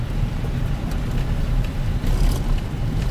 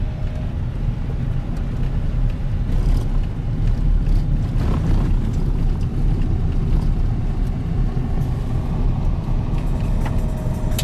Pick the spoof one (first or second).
first